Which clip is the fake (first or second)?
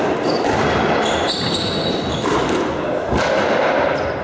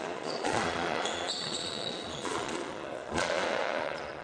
second